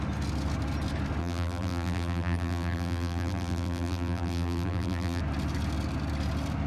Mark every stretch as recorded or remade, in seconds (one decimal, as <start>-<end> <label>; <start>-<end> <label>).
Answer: 0.0-1.2 recorded; 1.2-5.2 remade; 5.2-6.7 recorded